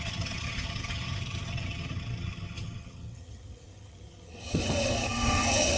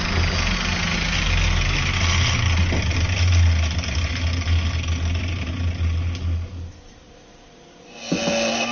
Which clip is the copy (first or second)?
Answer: first